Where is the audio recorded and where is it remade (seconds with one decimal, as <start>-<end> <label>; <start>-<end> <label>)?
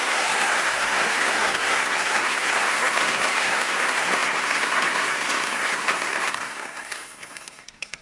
0.0-8.0 remade